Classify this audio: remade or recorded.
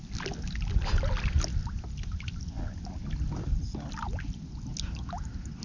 recorded